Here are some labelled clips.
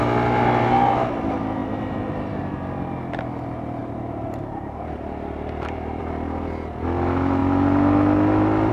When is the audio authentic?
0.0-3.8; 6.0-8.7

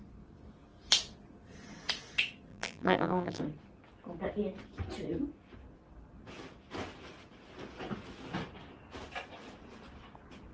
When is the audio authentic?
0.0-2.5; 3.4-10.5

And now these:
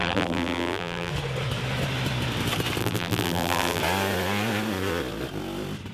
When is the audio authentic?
1.1-2.8; 3.8-5.9

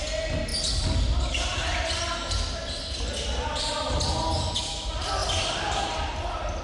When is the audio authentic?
0.0-6.6

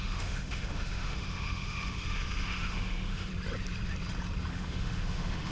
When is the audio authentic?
3.3-4.5

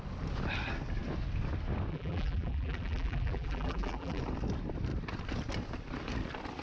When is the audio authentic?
0.0-1.9; 4.2-6.6

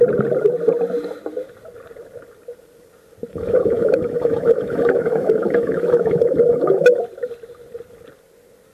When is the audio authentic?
0.0-3.3; 7.0-8.7

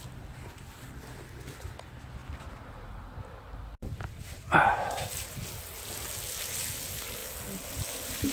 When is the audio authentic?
0.0-8.3